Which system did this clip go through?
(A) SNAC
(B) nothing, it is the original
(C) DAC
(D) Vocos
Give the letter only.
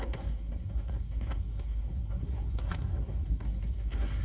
A